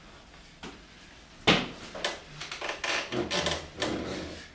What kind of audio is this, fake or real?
real